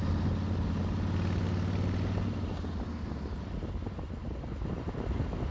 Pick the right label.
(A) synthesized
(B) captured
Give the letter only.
B